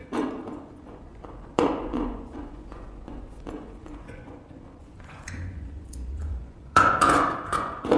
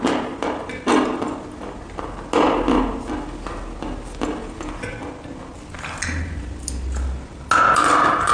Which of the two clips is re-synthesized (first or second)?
first